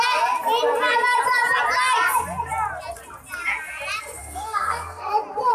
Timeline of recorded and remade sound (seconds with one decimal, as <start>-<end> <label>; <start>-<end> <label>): 0.0-4.2 recorded; 4.2-5.1 remade; 5.1-5.5 recorded